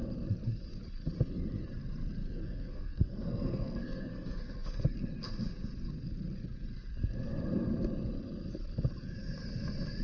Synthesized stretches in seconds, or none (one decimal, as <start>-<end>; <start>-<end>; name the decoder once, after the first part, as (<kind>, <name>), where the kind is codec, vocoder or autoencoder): 2.2-4.8 (codec, SNAC)